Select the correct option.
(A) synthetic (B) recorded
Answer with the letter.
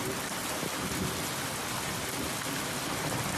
B